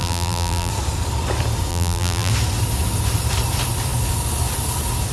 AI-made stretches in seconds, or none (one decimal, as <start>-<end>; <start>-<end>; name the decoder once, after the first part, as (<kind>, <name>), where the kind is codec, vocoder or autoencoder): 0.0-0.7 (vocoder, BigVGAN v2); 1.7-2.3